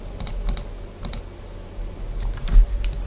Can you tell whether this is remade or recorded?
recorded